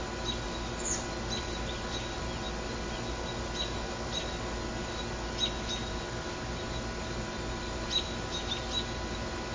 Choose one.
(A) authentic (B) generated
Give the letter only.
A